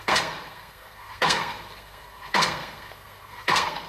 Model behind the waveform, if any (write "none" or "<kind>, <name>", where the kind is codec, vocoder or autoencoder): codec, SNAC